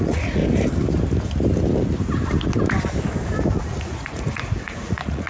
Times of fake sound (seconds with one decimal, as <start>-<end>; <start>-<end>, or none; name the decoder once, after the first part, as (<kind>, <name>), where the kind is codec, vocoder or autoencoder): 0.0-0.4 (vocoder, Vocos); 3.6-5.3